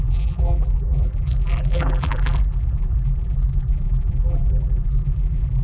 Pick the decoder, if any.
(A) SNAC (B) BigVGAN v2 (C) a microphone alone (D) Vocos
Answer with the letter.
B